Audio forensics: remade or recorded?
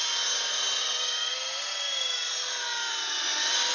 recorded